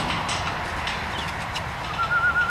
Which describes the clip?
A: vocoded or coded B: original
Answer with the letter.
B